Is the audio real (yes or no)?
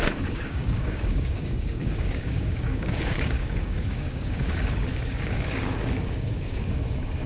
no